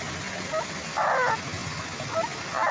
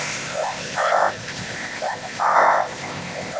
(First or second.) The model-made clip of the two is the second